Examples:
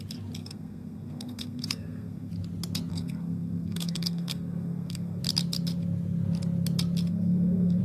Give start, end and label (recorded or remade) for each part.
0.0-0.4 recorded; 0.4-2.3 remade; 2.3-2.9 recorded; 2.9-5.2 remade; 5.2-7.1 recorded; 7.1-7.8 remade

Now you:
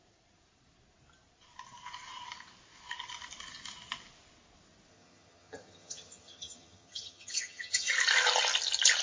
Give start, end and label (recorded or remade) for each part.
0.0-4.9 recorded; 4.9-7.9 remade; 7.9-9.0 recorded

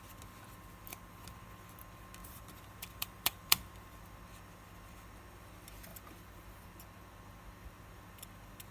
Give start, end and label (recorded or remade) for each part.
0.0-2.2 recorded; 2.2-4.0 remade; 4.0-8.7 recorded

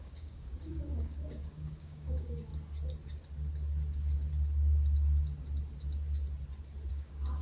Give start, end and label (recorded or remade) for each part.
0.0-2.5 remade; 2.5-6.9 recorded; 6.9-7.4 remade

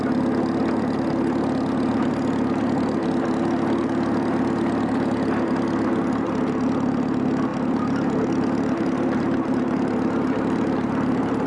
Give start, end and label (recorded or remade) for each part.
0.0-7.5 recorded; 7.5-11.5 remade

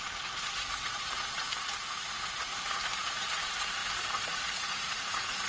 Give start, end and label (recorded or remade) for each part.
0.0-2.5 remade; 2.5-3.0 recorded; 3.0-5.5 remade